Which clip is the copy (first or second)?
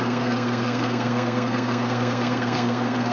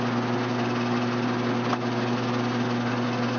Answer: first